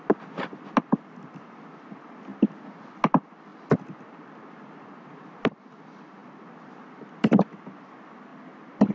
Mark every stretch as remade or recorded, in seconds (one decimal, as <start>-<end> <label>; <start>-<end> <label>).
0.0-8.9 recorded